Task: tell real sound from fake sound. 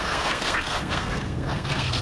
fake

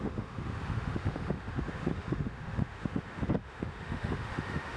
fake